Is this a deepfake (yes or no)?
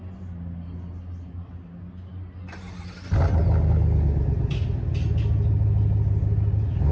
no